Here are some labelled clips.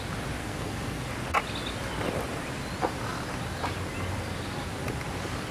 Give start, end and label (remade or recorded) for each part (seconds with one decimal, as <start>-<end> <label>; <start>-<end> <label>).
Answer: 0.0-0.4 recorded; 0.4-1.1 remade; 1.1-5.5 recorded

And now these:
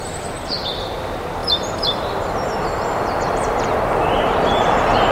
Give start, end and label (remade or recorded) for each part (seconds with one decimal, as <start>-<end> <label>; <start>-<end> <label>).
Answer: 0.0-5.1 recorded

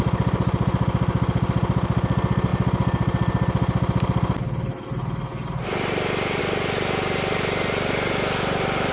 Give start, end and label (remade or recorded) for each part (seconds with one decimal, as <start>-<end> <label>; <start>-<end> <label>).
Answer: 0.0-8.9 recorded

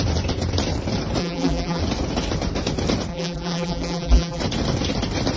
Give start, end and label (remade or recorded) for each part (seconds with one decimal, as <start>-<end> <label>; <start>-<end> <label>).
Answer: 0.0-1.2 recorded; 1.2-1.8 remade; 1.8-3.1 recorded; 3.1-4.4 remade; 4.4-5.4 recorded

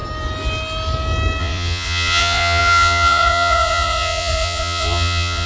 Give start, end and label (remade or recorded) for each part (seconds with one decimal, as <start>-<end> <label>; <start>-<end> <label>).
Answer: 0.0-1.4 recorded; 1.4-5.5 remade

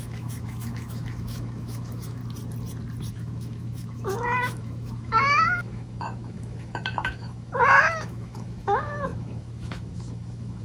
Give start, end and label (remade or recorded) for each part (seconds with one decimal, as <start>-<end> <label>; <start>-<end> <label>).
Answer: 0.0-2.2 remade; 2.2-3.1 recorded; 3.1-10.6 remade

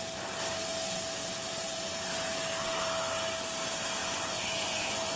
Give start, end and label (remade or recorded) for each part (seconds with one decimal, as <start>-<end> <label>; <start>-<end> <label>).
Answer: 0.0-4.0 recorded; 4.0-5.2 remade

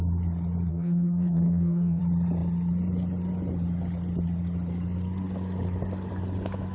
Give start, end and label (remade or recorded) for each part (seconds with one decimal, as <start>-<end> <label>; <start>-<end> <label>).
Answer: 0.0-0.7 recorded; 0.7-2.0 remade; 2.0-6.7 recorded